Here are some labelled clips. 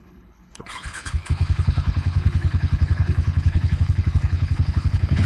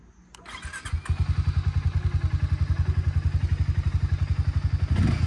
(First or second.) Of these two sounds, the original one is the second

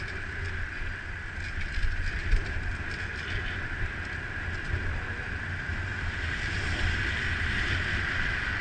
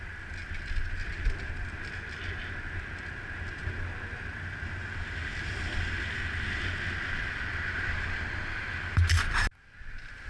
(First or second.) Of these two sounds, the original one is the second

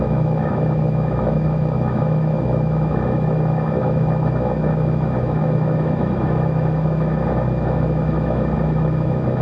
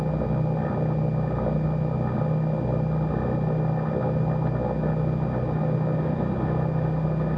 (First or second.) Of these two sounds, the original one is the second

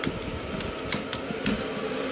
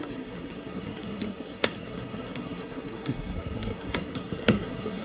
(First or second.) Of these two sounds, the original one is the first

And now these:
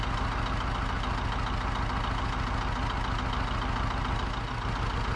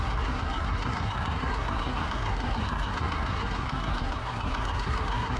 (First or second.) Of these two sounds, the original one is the first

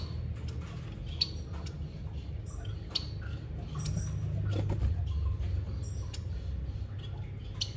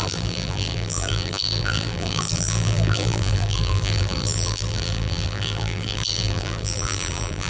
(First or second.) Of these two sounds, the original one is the first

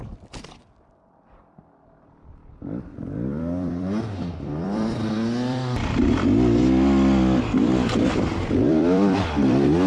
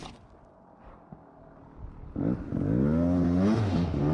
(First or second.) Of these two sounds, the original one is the second